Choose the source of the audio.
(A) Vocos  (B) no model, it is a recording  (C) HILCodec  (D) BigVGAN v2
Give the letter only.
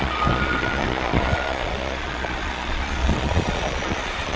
A